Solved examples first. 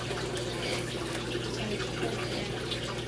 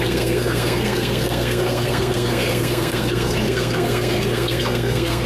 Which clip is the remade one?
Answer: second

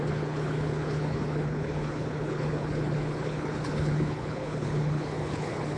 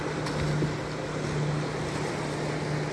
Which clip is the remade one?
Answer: first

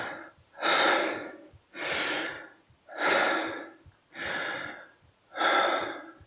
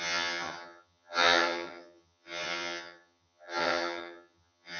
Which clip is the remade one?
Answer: second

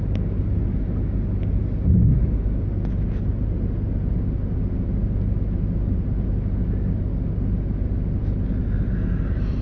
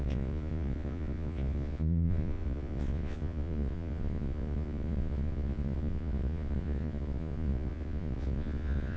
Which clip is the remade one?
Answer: second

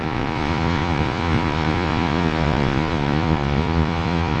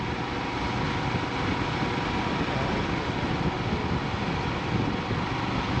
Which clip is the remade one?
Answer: first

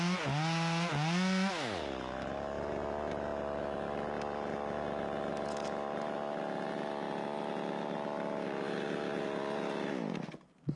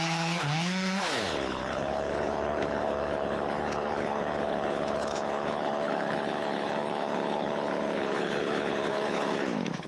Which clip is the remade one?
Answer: second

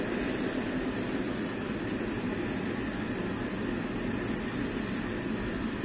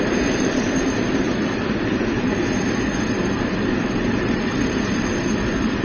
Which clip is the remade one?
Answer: second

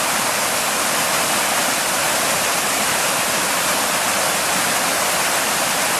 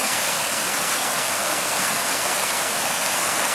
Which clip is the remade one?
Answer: second